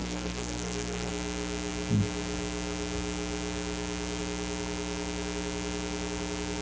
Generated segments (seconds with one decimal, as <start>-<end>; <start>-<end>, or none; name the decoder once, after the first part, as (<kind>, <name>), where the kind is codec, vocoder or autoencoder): 0.0-1.1 (codec, SNAC)